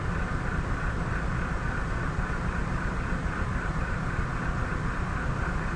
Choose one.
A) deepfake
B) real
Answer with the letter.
B